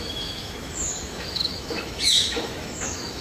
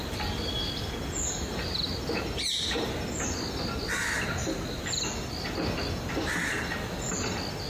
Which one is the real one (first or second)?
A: second